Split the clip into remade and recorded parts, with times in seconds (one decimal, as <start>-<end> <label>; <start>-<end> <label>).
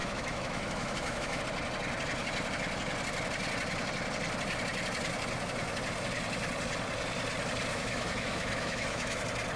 0.0-1.4 remade; 1.4-7.7 recorded; 7.7-9.2 remade; 9.2-9.6 recorded